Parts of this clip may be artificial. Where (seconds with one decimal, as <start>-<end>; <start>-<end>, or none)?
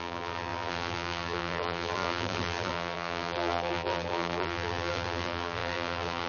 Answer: 0.0-6.3